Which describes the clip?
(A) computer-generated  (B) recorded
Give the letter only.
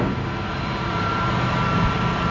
B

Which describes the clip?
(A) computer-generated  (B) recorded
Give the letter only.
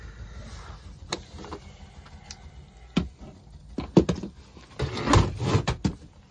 B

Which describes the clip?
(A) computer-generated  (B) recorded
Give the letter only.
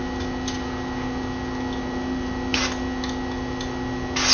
B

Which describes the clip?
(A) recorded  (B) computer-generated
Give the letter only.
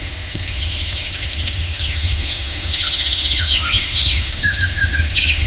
B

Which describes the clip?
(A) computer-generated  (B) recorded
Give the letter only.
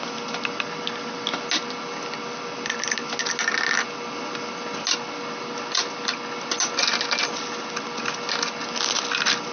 B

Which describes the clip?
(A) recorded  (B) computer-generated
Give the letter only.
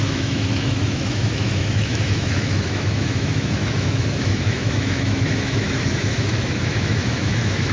B